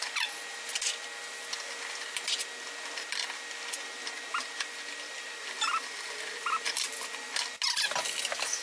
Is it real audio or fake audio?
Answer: real